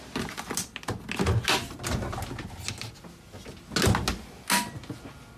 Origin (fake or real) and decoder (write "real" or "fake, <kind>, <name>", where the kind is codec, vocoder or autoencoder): real